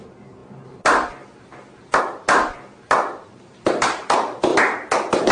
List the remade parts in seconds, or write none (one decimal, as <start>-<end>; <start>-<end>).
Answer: 0.0-4.5

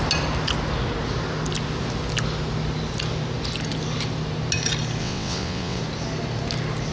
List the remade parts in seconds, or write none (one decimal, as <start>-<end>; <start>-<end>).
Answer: 5.0-5.8

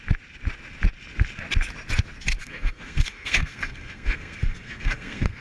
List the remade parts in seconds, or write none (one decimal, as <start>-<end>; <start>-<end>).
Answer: 2.4-5.4

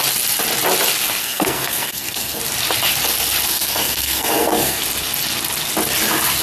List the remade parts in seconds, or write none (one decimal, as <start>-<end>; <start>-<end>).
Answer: 1.2-2.4; 3.5-4.8

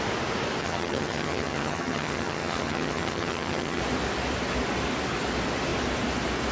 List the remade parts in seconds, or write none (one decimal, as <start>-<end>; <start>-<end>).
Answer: 0.6-3.8

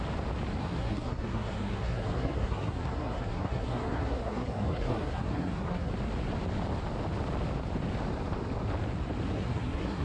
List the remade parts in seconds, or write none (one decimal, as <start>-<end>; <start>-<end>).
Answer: 0.6-5.9; 9.3-10.0

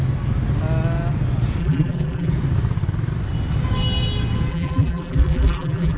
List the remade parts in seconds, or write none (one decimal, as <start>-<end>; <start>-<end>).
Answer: 1.6-2.3; 4.5-6.0